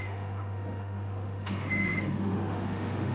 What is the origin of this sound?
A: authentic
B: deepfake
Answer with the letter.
B